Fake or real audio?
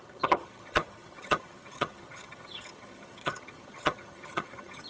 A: fake